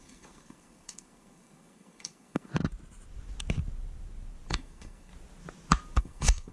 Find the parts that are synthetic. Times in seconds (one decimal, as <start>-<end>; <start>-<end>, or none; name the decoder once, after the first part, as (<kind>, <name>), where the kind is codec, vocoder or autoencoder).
0.0-2.5 (codec, SNAC); 4.5-5.1; 6.0-6.5

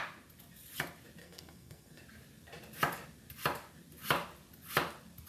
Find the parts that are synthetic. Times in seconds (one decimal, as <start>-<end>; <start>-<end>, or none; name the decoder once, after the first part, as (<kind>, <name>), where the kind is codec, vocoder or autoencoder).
1.2-2.0 (codec, SNAC)

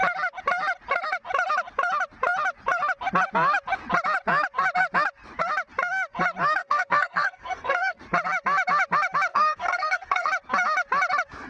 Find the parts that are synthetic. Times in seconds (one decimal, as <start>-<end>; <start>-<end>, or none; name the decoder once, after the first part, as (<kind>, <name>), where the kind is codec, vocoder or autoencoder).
6.6-8.0 (codec, SNAC); 9.3-10.3

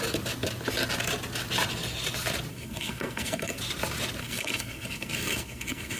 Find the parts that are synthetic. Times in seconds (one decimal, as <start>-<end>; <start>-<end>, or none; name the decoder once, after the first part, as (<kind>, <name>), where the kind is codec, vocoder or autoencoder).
2.5-3.6 (codec, SNAC); 4.2-6.0